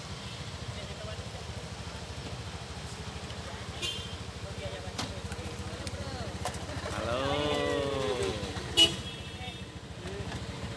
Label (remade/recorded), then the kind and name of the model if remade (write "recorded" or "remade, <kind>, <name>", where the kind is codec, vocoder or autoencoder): recorded